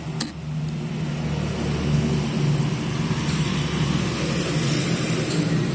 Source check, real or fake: real